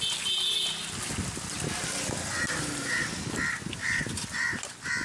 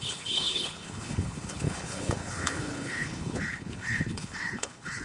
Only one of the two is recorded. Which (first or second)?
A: first